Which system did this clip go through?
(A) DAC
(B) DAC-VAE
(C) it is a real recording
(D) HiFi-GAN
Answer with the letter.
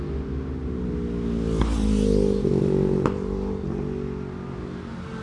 C